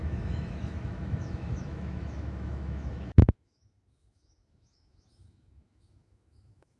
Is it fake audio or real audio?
fake